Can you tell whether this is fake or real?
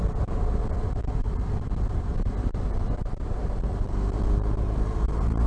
fake